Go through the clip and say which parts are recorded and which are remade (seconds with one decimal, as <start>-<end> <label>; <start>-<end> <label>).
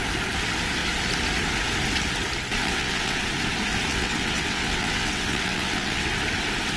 0.0-2.6 recorded; 2.6-3.2 remade; 3.2-3.9 recorded; 3.9-6.1 remade; 6.1-6.8 recorded